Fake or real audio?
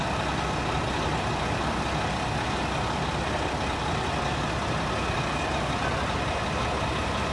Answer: real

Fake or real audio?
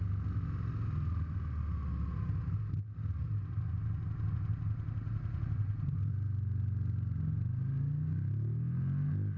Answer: real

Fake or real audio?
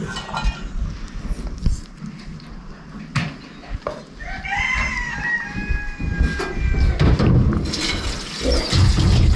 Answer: real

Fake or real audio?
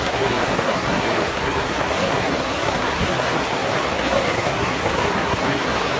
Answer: fake